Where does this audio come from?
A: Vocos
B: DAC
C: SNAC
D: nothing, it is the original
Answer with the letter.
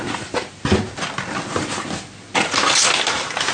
D